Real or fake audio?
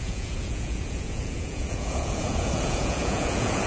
fake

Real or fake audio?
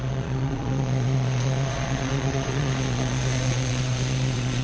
fake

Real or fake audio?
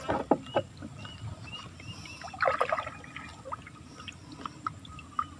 real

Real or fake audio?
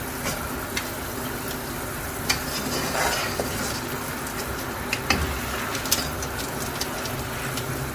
real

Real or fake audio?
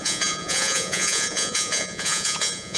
fake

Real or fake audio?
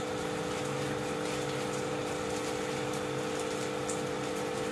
real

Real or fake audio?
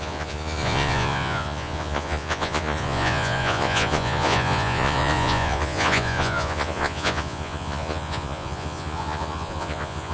fake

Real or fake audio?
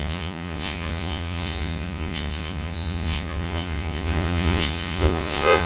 fake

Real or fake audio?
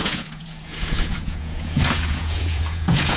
fake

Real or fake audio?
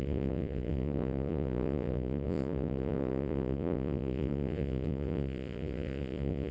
fake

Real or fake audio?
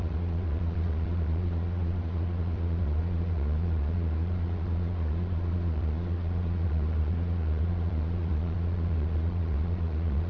fake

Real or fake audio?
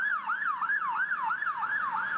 real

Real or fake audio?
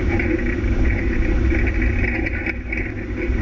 real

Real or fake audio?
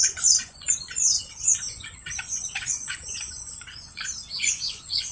fake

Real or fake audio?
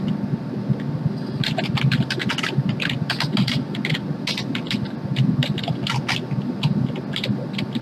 real